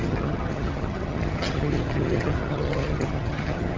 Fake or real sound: fake